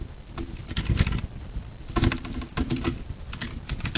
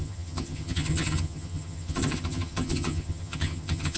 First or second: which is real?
first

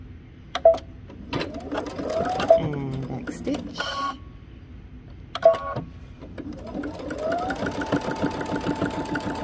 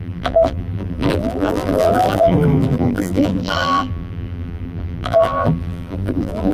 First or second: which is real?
first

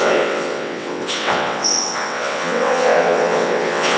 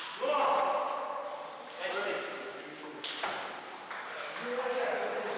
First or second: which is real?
second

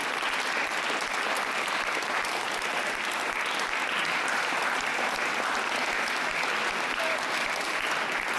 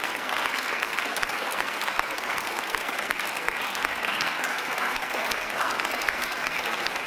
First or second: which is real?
first